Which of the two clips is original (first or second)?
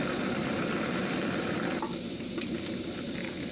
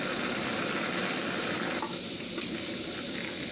second